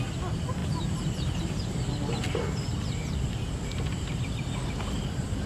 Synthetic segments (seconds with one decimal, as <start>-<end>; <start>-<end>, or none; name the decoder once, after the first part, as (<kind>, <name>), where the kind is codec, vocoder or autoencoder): none